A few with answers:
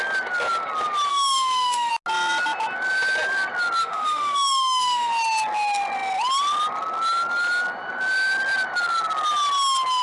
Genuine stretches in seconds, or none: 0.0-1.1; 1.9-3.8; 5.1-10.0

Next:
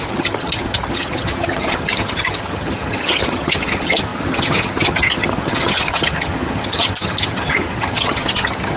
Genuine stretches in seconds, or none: none

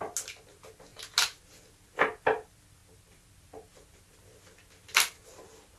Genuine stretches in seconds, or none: 0.0-5.8

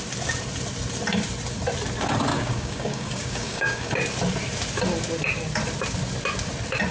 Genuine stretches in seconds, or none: 0.0-2.3; 3.9-6.9

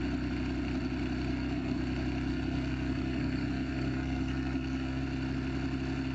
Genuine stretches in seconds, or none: 0.0-1.3; 1.8-2.3; 5.0-6.1

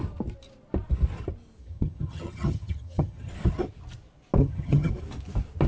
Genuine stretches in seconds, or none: 0.0-1.6; 3.3-4.4; 4.9-5.7

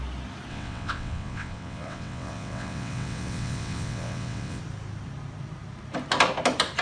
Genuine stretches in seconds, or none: 0.0-0.5; 4.6-6.8

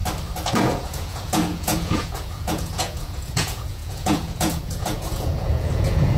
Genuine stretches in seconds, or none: 0.0-0.5